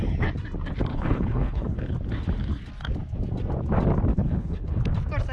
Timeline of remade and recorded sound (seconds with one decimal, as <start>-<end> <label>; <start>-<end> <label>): 0.0-0.9 recorded; 0.9-1.9 remade; 1.9-4.1 recorded; 4.1-4.8 remade; 4.8-5.3 recorded